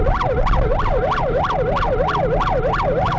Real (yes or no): yes